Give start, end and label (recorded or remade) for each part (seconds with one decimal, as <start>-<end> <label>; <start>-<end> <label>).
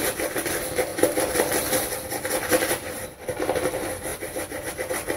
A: 0.0-4.1 recorded; 4.1-4.7 remade; 4.7-5.2 recorded